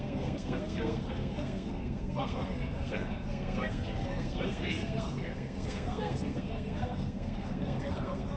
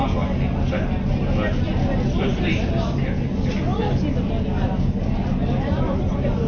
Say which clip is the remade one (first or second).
first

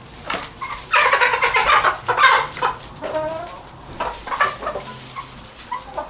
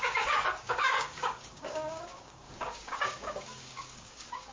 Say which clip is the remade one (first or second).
second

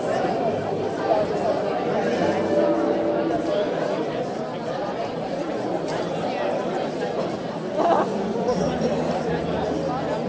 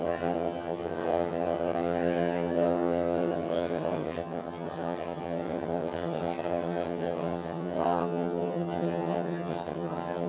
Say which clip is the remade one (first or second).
second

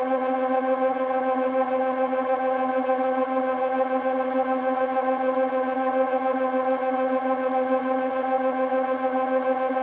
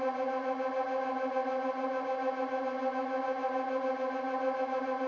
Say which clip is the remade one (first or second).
first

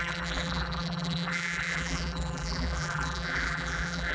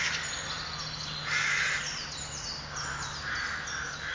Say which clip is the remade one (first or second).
first